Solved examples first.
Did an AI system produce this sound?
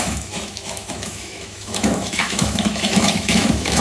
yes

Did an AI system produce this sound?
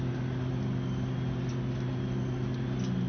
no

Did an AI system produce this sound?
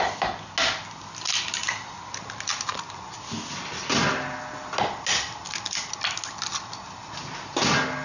no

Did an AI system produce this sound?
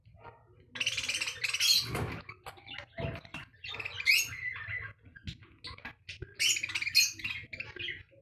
no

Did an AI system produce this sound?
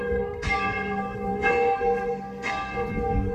yes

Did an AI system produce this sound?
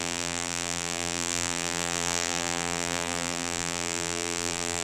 yes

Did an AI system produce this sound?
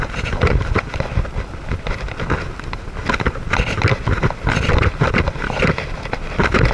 no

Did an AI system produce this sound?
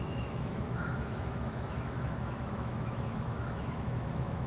yes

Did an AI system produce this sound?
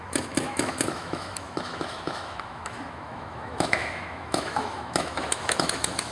yes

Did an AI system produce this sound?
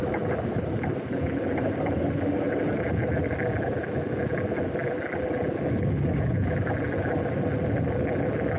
no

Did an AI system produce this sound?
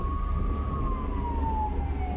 no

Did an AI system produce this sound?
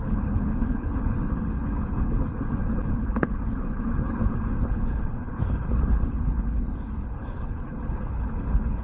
yes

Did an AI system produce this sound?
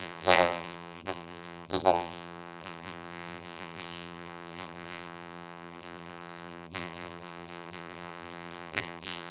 yes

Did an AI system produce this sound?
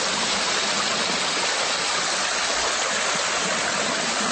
no